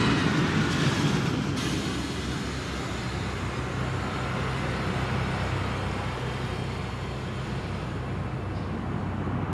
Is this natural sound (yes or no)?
yes